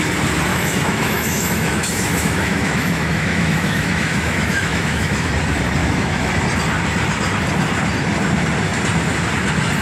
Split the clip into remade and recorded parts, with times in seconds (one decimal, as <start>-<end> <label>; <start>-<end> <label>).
0.0-0.5 recorded; 0.5-5.3 remade; 5.3-5.8 recorded; 5.8-6.3 remade; 6.3-9.8 recorded